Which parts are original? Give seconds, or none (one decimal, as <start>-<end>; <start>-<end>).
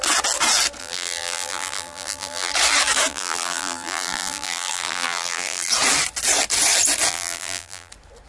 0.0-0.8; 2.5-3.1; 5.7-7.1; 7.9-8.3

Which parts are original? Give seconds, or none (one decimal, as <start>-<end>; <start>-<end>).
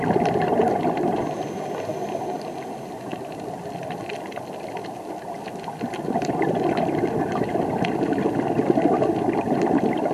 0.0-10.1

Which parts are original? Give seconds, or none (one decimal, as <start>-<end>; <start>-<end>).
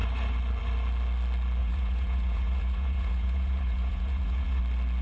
0.0-1.6; 4.6-5.0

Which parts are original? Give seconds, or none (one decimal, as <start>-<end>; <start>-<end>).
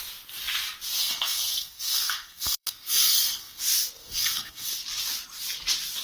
0.0-1.0; 3.6-4.0; 4.7-6.0